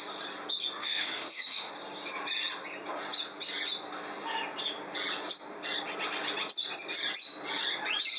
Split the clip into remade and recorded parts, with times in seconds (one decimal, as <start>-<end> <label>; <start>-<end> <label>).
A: 0.0-0.8 recorded; 0.8-1.7 remade; 1.7-8.2 recorded